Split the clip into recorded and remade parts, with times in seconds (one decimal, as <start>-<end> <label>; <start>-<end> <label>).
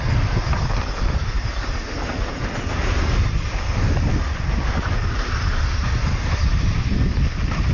0.0-1.2 remade; 1.2-5.6 recorded; 5.6-7.7 remade